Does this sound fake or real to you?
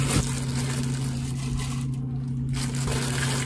real